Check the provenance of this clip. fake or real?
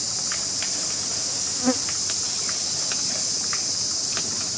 real